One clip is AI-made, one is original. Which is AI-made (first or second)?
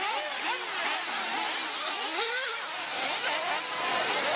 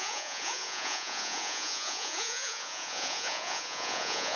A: second